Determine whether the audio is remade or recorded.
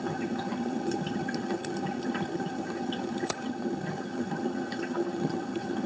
remade